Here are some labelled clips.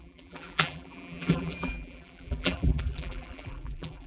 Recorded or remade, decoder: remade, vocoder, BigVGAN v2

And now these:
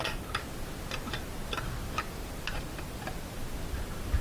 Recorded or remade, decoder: recorded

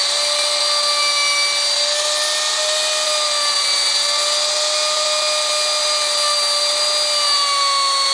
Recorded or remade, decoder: recorded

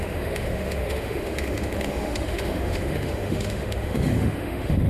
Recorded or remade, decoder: remade, autoencoder, DAC-VAE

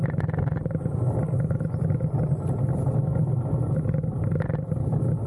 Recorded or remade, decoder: recorded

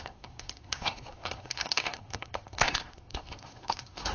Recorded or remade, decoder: remade, codec, SNAC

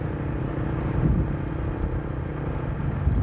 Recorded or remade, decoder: recorded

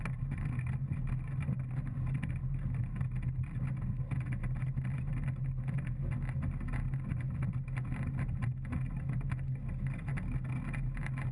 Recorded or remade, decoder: recorded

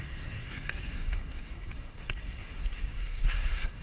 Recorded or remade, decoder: remade, codec, SNAC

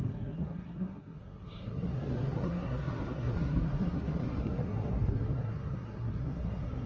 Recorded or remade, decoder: remade, codec, SNAC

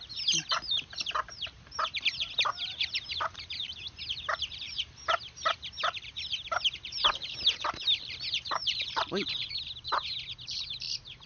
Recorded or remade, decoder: remade, vocoder, BigVGAN v2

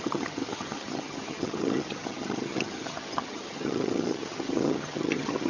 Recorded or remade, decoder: remade, vocoder, HiFi-GAN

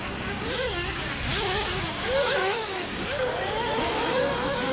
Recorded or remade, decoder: remade, codec, DAC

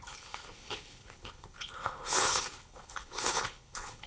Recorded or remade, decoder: remade, codec, HILCodec